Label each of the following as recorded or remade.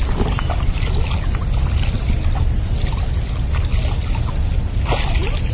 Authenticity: recorded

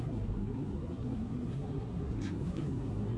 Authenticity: remade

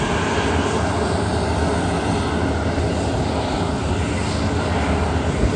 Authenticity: recorded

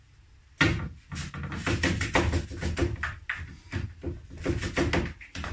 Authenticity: recorded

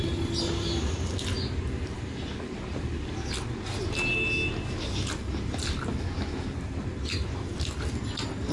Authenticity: recorded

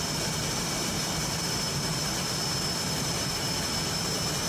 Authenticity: recorded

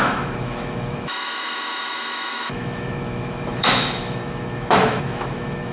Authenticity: remade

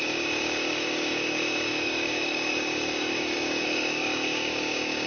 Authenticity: remade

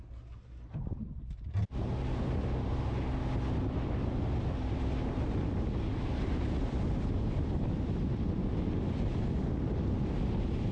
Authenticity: recorded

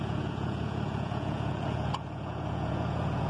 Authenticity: remade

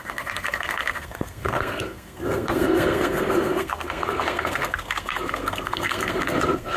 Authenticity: remade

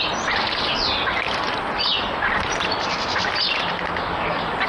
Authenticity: recorded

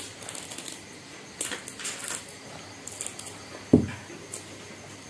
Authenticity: recorded